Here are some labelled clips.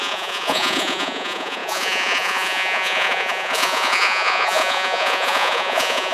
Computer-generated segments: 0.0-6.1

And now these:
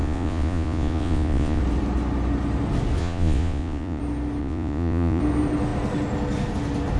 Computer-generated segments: 0.0-1.6; 3.0-4.0; 4.4-5.2

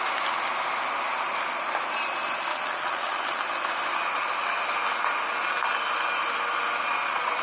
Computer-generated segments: 2.5-3.4

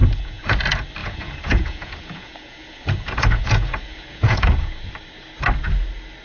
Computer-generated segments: 0.0-0.6; 1.0-4.7

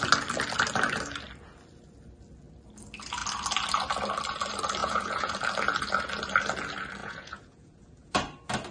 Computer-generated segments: 4.8-5.3; 7.0-8.1

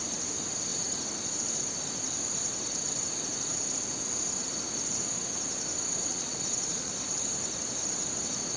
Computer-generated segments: 6.1-6.9